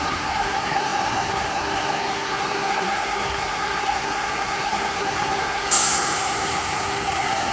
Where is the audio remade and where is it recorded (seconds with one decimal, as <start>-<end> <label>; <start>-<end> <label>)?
0.0-7.5 remade